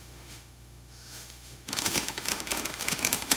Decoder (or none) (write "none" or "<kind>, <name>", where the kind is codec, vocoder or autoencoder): autoencoder, DAC-VAE